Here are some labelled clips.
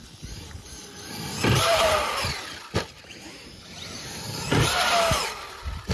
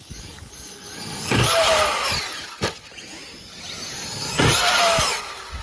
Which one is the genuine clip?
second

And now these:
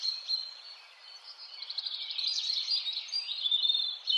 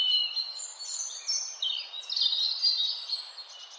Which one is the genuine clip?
second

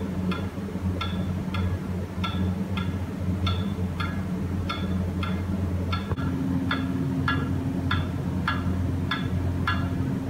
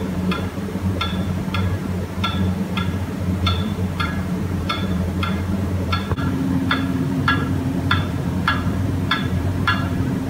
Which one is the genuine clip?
first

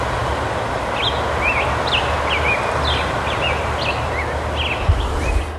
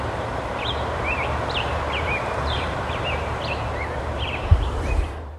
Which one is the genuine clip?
first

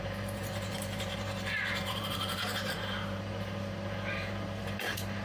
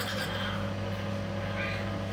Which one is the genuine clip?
second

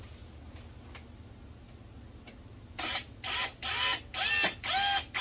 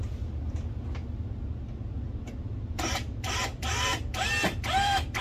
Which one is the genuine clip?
first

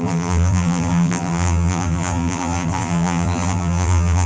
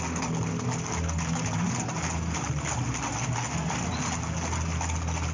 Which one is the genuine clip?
second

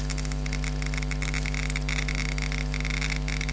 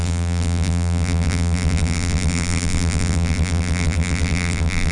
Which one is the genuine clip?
first